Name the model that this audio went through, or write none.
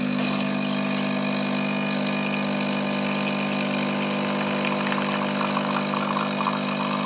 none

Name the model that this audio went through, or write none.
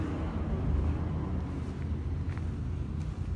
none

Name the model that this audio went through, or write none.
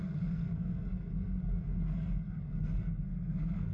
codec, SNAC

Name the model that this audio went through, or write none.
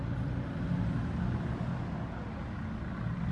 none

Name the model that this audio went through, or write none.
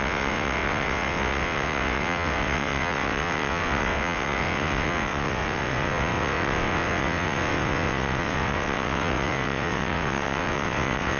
vocoder, WaveNeXt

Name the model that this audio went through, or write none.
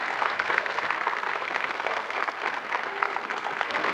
codec, SNAC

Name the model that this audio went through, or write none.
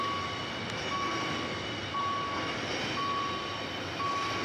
none